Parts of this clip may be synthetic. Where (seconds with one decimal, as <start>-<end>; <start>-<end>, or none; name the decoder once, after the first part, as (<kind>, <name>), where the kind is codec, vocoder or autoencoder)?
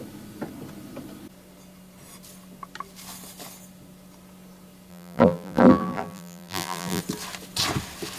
4.9-7.0 (vocoder, BigVGAN v2)